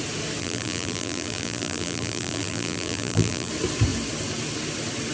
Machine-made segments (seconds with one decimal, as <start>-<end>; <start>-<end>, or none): 0.4-3.5

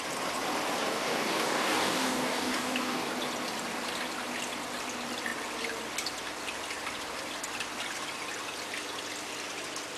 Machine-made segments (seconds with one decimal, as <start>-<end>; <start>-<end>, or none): 0.8-3.1

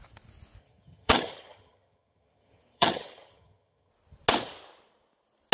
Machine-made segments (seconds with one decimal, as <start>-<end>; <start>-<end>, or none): 0.6-3.9